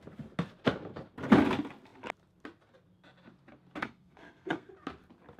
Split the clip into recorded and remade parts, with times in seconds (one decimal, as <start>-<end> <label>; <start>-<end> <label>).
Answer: 0.0-3.8 recorded; 3.8-4.7 remade; 4.7-5.4 recorded